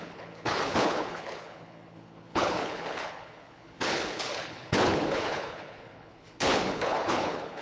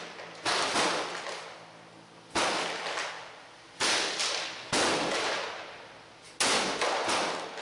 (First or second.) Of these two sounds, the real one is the second